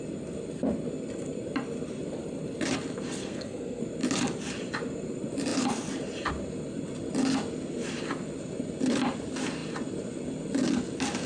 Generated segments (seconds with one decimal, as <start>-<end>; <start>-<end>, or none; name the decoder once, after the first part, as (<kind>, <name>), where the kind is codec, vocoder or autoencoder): 3.2-3.8 (codec, SNAC)